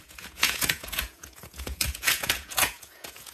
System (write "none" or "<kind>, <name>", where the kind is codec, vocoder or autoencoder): vocoder, Vocos